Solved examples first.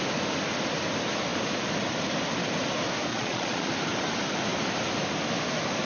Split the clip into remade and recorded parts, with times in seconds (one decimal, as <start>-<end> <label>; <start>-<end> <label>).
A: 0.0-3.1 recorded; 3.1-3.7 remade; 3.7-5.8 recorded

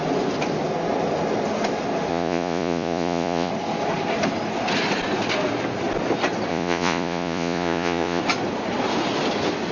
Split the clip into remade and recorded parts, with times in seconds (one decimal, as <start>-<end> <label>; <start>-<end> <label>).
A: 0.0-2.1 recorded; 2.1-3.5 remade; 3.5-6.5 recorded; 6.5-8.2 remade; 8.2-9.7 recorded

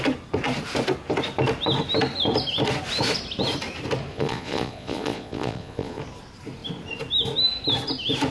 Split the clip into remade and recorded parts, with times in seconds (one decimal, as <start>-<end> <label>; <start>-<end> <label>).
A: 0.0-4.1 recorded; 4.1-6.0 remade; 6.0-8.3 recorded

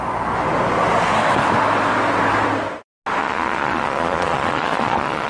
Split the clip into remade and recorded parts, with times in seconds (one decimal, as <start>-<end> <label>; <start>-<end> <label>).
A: 0.0-3.2 recorded; 3.2-5.3 remade